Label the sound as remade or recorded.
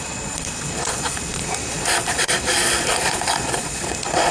remade